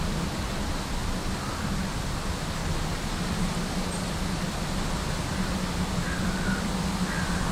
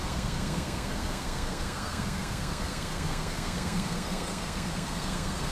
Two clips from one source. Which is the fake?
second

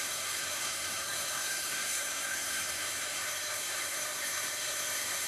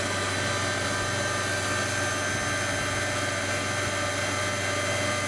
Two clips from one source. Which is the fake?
first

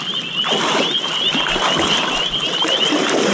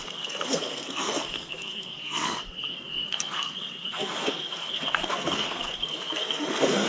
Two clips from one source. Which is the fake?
second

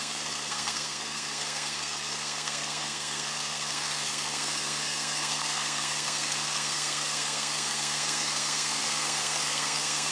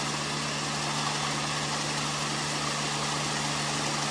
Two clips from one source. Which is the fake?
first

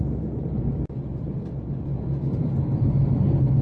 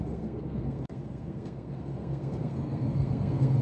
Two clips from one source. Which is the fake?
second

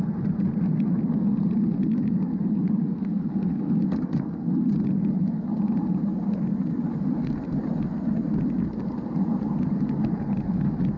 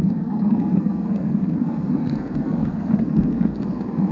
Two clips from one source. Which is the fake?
second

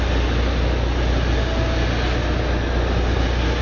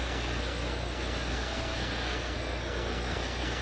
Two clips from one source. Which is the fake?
second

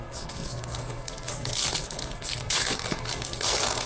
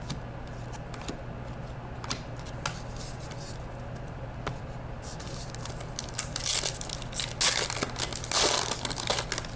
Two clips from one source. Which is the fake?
first